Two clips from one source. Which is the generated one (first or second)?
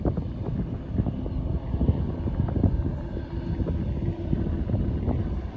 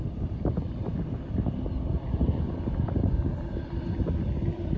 second